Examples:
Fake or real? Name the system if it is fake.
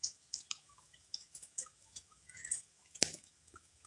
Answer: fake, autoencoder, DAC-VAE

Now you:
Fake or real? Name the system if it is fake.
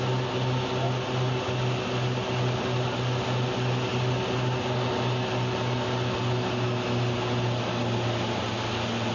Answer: real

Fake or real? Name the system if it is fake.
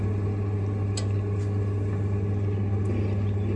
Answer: real